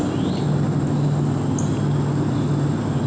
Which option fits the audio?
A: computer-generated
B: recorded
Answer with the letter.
B